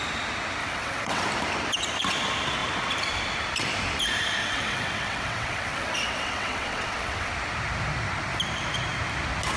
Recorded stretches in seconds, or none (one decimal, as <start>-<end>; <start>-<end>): 0.0-0.6; 1.2-4.4; 7.3-9.6